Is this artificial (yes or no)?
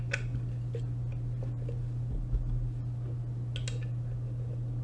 no